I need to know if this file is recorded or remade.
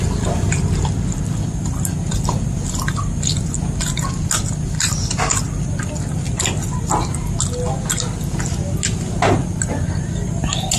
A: recorded